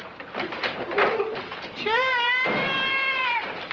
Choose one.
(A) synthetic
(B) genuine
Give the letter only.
A